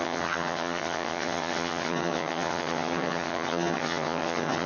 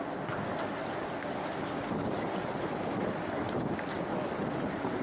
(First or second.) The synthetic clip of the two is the first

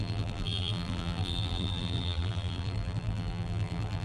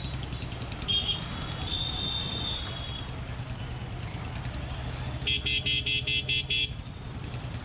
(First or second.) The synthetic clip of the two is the first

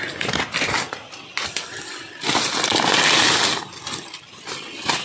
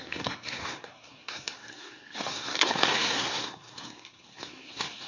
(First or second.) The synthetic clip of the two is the second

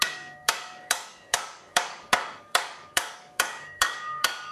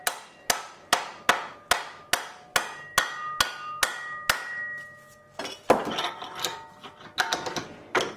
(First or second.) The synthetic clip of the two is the first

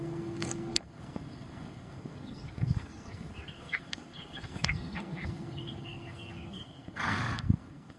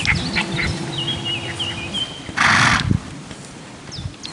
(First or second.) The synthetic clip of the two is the first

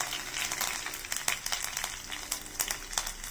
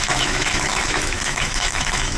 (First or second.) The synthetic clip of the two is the second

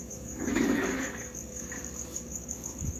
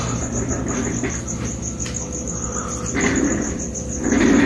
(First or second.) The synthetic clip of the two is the first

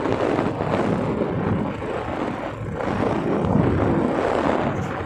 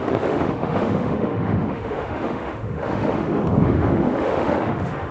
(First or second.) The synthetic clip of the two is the second